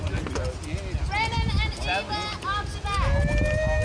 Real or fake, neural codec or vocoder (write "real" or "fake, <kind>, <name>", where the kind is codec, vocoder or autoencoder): real